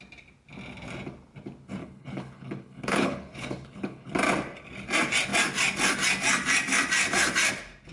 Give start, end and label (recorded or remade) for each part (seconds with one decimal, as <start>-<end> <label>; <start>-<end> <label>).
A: 0.0-1.8 recorded; 1.8-4.1 remade; 4.1-7.9 recorded